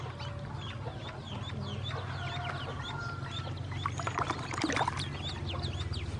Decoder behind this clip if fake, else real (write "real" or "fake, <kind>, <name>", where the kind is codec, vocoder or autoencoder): real